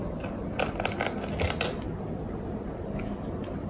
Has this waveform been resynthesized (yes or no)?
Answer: no